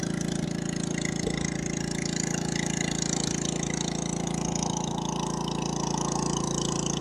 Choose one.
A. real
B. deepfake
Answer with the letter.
A